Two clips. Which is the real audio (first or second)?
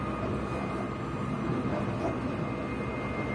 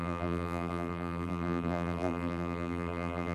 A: first